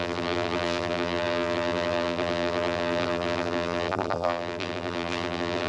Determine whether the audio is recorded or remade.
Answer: remade